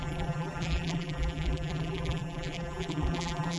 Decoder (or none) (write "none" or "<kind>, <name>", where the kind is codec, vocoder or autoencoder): vocoder, BigVGAN v2